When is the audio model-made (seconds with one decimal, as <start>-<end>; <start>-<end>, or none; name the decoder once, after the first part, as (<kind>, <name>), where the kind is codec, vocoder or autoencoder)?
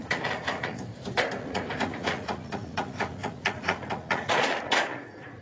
0.0-0.9 (vocoder, Vocos); 1.4-5.4